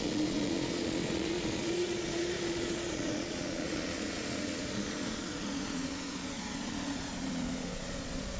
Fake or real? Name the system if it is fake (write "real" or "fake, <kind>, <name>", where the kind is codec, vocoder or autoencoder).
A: fake, vocoder, Vocos